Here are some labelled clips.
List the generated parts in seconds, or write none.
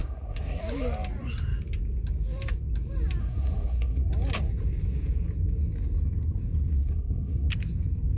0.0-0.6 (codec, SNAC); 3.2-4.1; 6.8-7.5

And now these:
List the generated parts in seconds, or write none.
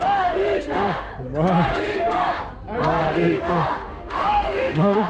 0.0-1.1 (autoencoder, DAC-VAE); 1.7-2.4; 3.0-5.1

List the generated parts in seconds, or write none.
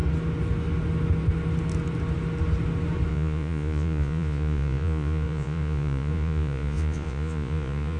3.1-8.0 (vocoder, Vocos)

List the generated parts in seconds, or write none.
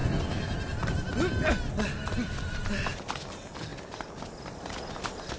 none